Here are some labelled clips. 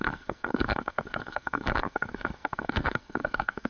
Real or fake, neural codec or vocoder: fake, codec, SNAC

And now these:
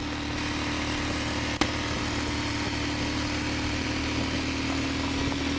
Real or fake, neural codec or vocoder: real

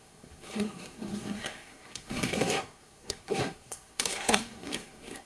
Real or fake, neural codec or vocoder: fake, codec, SNAC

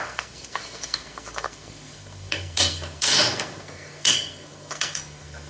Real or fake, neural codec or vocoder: fake, codec, SNAC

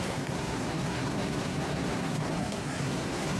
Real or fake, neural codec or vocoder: fake, codec, SNAC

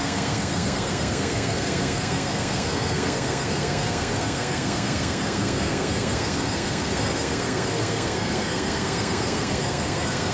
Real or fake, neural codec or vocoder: fake, codec, SNAC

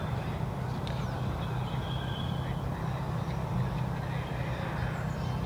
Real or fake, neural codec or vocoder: real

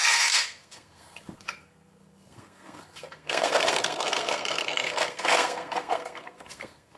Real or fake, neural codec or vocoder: fake, codec, SNAC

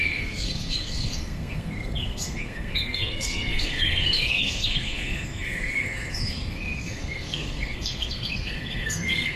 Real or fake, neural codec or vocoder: fake, codec, SNAC